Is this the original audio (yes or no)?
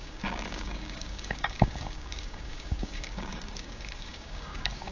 no